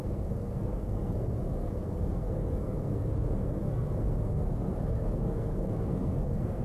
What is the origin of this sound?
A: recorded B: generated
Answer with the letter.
B